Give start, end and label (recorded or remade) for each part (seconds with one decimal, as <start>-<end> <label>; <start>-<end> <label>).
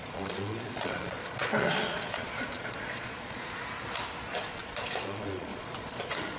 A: 0.0-3.6 remade; 3.6-4.3 recorded; 4.3-6.4 remade